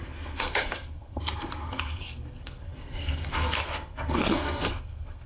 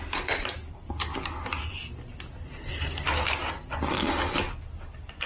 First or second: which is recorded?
second